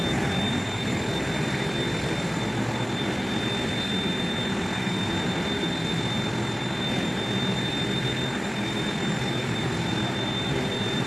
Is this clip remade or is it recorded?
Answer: recorded